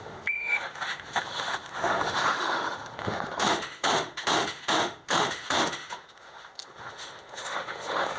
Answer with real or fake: fake